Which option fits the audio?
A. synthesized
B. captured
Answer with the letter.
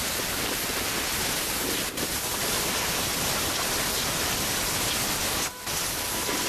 B